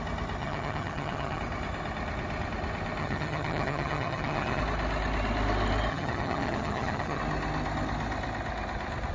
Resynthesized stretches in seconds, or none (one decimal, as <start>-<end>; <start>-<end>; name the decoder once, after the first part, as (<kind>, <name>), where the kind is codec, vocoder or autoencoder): 0.4-1.4 (vocoder, HiFi-GAN); 3.0-4.6; 5.9-7.2